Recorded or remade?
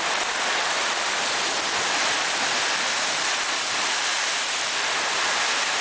recorded